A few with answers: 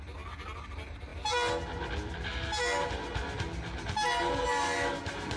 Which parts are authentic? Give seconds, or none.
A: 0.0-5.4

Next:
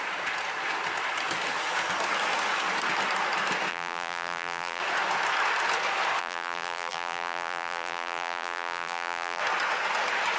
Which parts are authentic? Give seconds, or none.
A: 0.0-3.7; 4.8-6.2; 9.4-10.4

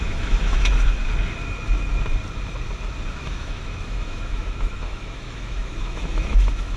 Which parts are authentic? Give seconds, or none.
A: 1.0-3.1

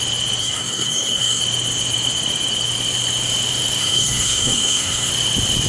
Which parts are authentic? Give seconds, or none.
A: 0.0-0.4; 1.4-3.8; 5.1-5.7

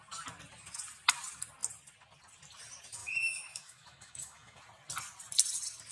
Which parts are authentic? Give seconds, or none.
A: 0.0-3.0; 4.6-5.9

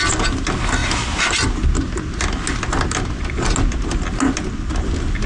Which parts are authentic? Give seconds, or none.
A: 0.0-5.3

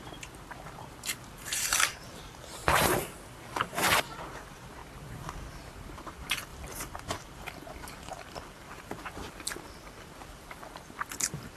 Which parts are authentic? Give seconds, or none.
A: 2.6-3.1; 4.8-5.6

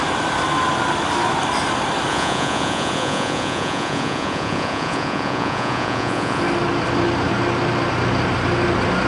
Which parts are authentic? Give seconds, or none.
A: 0.0-2.1; 6.4-9.1